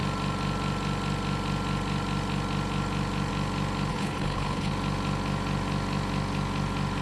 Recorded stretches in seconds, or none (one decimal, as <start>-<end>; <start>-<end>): 0.0-3.9; 4.7-7.0